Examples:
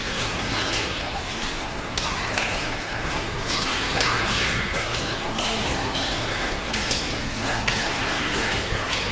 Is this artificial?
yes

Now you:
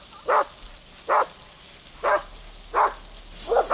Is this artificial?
no